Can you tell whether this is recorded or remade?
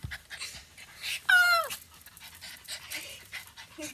recorded